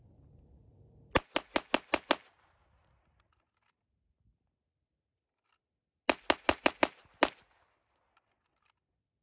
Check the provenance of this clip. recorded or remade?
recorded